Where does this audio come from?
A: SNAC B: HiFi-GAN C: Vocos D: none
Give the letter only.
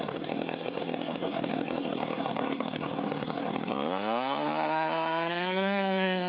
A